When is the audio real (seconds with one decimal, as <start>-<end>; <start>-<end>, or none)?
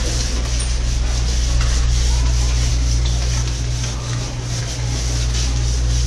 0.0-6.1